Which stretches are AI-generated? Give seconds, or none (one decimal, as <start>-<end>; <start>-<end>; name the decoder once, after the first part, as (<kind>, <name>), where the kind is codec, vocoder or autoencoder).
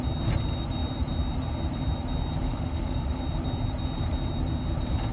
2.4-3.2 (autoencoder, DAC-VAE)